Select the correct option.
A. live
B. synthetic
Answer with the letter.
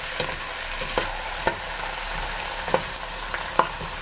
A